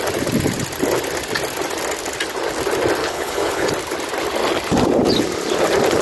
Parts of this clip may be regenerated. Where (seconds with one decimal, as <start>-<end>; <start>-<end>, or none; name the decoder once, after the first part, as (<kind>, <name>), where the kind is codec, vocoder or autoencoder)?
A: 3.0-3.7 (codec, HILCodec)